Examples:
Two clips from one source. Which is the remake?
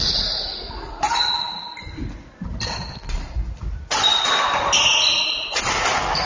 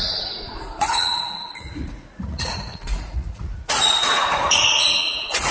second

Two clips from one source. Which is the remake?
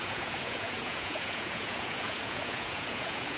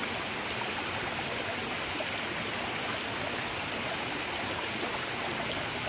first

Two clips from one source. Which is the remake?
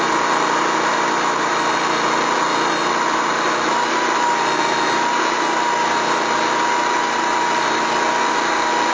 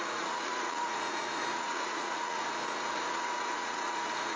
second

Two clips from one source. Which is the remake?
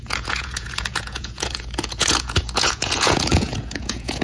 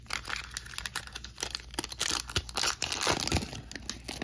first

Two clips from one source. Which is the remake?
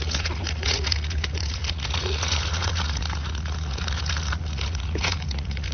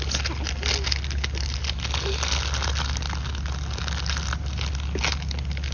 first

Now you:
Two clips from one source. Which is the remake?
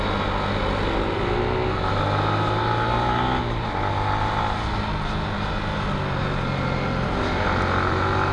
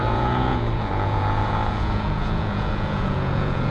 second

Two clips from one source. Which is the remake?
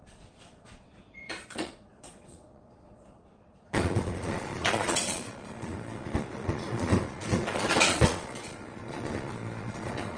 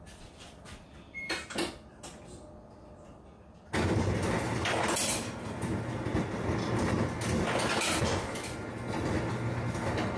first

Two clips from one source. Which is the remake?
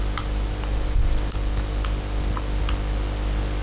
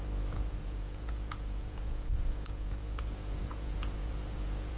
second